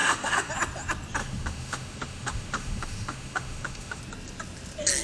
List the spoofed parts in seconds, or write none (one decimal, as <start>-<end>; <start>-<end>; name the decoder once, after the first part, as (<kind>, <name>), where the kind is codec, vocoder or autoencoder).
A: 0.0-0.5 (autoencoder, DAC-VAE); 1.2-4.0